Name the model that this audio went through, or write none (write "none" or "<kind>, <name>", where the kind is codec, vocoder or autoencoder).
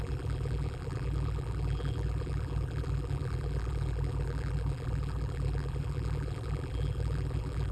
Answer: vocoder, BigVGAN v2